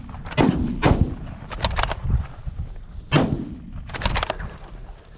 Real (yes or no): yes